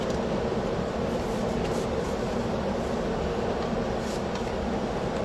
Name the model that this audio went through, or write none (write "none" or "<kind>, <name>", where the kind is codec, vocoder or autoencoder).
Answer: none